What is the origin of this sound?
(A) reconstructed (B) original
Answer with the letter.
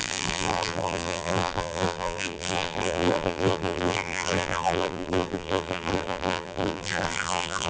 A